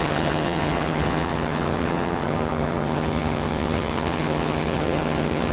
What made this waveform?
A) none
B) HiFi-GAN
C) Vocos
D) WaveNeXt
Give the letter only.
B